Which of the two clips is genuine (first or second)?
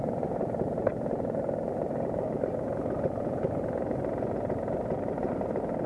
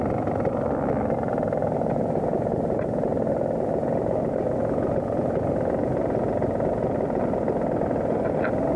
second